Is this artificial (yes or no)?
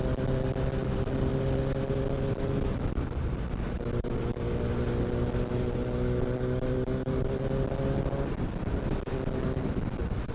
no